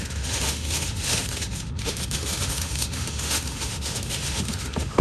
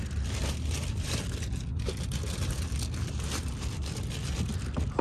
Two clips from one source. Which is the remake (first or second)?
first